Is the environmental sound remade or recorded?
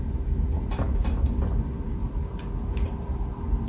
recorded